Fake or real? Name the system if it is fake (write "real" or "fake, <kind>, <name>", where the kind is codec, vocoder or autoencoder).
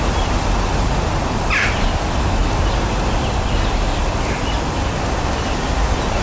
real